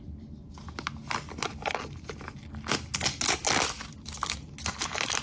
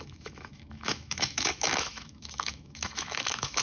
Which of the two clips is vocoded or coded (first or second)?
second